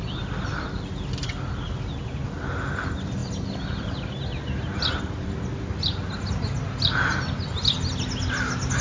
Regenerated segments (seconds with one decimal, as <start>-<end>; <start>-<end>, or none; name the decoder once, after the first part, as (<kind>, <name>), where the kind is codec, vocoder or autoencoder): none